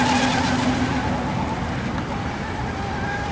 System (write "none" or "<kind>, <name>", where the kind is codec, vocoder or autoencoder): none